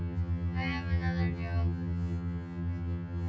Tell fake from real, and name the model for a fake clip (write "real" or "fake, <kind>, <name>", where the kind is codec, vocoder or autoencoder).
fake, vocoder, HiFi-GAN